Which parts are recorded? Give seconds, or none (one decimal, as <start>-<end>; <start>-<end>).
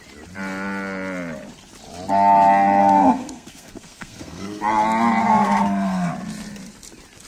0.0-2.8; 4.6-5.2; 6.1-7.3